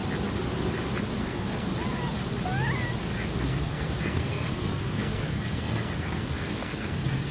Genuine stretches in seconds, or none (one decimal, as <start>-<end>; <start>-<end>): 0.0-1.2; 1.7-3.4